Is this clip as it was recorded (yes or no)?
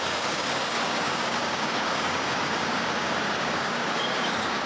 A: no